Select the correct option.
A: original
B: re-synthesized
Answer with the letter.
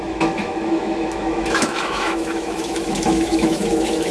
B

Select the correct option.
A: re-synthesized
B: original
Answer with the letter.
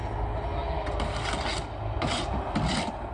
B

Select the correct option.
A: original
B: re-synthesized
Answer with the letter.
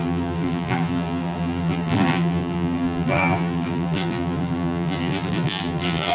B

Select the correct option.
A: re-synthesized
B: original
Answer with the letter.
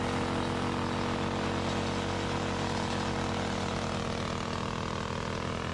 B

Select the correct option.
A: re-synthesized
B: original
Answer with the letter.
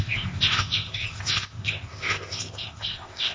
A